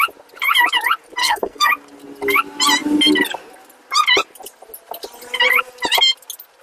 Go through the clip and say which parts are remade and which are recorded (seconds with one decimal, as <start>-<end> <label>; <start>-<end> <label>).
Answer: 0.0-1.2 recorded; 1.2-1.7 remade; 1.7-6.6 recorded